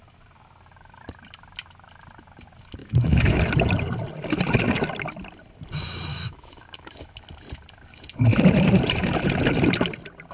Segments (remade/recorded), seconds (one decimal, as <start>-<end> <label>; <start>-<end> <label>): 0.0-2.8 recorded; 2.8-3.4 remade; 3.4-6.1 recorded; 6.1-7.2 remade; 7.2-10.3 recorded